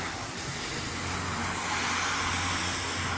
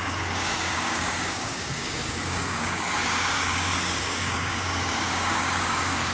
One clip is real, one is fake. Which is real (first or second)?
first